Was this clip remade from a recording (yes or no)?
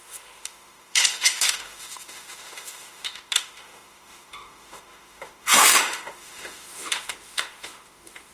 yes